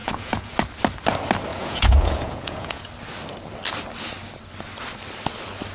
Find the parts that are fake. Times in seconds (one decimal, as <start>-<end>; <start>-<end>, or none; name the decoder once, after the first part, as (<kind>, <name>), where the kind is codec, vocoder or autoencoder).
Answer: 0.0-0.5 (vocoder, Vocos); 1.5-2.9